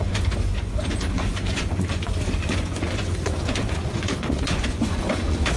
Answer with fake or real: fake